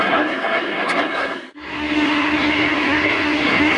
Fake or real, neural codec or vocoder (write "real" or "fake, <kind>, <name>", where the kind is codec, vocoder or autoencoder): fake, codec, SNAC